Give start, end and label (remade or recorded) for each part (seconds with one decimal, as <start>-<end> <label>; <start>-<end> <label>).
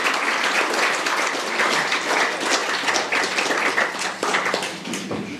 0.0-5.4 recorded